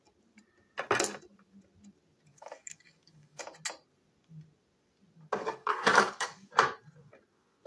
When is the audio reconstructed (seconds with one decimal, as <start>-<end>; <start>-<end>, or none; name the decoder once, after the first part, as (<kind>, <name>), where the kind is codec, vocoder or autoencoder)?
2.3-3.4 (codec, DAC); 5.4-6.5